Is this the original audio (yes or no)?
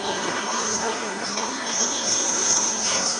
no